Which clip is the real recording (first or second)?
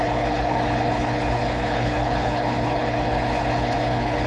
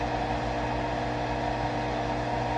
second